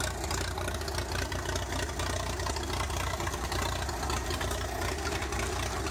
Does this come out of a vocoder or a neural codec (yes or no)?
no